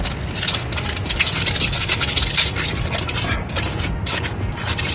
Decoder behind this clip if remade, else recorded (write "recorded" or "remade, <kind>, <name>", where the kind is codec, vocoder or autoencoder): recorded